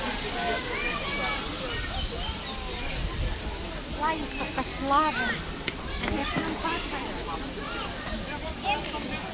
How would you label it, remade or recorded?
recorded